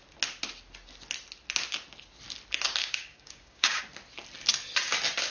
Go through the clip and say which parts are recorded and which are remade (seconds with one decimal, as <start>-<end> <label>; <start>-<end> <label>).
0.0-2.8 recorded; 2.8-3.8 remade; 3.8-5.3 recorded